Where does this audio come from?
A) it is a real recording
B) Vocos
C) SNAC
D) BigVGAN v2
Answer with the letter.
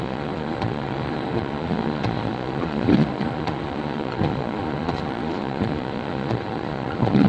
B